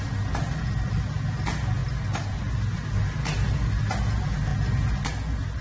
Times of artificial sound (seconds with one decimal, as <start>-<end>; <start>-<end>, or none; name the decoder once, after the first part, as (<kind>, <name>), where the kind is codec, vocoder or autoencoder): none

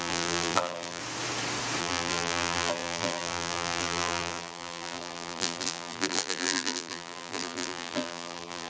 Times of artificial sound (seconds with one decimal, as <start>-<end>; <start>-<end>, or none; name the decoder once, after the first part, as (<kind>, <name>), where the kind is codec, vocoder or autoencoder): 0.0-1.0 (vocoder, BigVGAN v2); 1.8-8.7

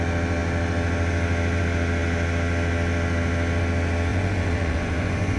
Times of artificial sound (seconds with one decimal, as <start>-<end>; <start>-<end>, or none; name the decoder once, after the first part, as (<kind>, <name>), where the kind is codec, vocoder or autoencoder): 4.1-5.4 (vocoder, Vocos)

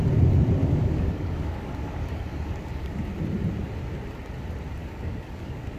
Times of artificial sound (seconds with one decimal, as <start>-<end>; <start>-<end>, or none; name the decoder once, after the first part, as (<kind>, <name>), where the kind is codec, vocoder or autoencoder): 0.6-3.0 (codec, DAC); 4.8-5.8

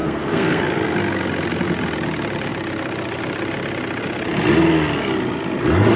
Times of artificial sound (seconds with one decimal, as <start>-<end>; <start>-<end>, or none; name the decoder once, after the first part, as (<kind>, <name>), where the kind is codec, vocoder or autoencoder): 0.0-0.6 (codec, SNAC)

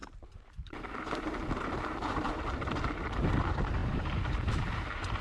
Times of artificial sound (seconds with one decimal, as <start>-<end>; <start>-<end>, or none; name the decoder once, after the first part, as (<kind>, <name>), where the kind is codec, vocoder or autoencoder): 0.0-5.2 (vocoder, BigVGAN v2)

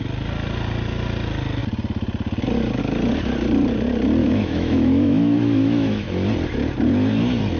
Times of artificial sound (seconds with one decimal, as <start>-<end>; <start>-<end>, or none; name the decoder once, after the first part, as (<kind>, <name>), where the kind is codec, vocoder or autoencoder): 4.2-6.1 (autoencoder, DAC-VAE)